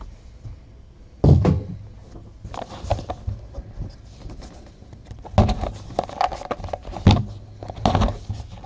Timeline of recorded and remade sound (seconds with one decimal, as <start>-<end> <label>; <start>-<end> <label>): 0.0-8.7 recorded